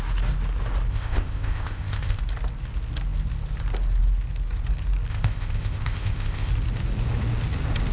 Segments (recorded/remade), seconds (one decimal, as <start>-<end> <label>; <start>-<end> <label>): 0.0-0.9 recorded; 0.9-2.2 remade; 2.2-5.1 recorded; 5.1-6.5 remade; 6.5-7.9 recorded